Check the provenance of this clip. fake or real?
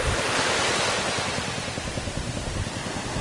real